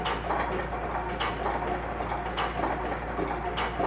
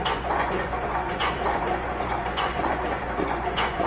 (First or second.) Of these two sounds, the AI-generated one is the second